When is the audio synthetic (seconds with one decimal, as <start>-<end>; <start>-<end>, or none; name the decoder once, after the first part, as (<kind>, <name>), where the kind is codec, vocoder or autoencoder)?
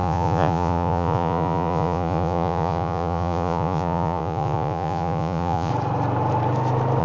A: 0.0-5.7 (vocoder, Vocos)